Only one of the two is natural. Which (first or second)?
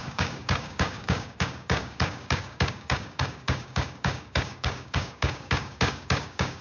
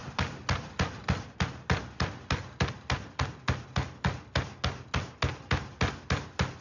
second